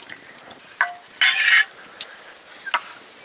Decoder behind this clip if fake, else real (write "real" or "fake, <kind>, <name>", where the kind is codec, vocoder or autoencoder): real